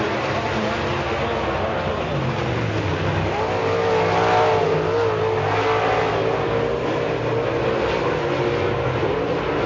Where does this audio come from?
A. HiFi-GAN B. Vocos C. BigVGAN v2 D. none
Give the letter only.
D